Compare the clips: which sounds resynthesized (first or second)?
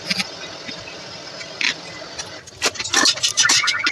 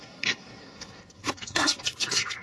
second